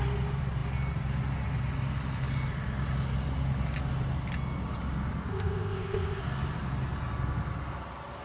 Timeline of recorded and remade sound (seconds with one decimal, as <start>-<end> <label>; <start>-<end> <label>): 0.0-5.3 recorded; 5.3-6.2 remade; 6.2-8.2 recorded